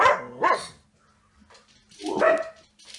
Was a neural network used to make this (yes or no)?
no